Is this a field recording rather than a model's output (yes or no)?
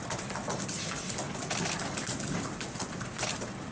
yes